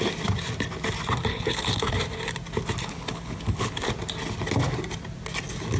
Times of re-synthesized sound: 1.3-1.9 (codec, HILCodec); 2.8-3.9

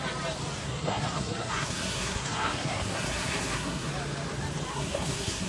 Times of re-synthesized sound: 0.6-3.9 (codec, SNAC); 4.7-5.5

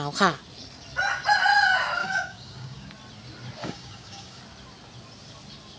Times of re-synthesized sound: 2.0-2.9 (codec, DAC); 3.6-4.4